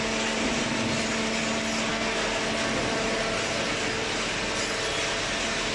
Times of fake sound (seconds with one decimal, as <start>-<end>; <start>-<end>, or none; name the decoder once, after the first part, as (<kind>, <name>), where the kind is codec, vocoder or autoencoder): 1.9-2.4 (codec, SNAC)